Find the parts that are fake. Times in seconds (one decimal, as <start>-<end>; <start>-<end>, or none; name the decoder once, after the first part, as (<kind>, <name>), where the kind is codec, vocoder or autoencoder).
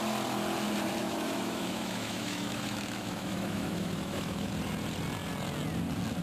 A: 1.0-4.5 (autoencoder, DAC-VAE)